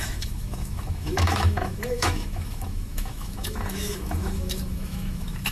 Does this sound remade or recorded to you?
remade